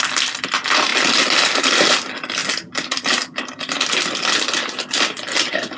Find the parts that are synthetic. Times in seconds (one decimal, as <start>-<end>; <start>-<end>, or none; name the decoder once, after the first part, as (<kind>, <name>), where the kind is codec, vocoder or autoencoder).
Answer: none